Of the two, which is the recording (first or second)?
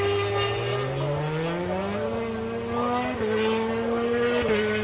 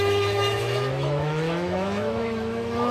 first